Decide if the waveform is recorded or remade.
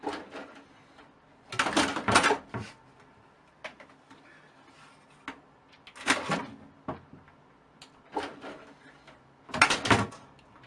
recorded